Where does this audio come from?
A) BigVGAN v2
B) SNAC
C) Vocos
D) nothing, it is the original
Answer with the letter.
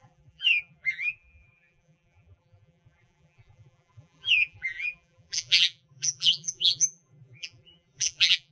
A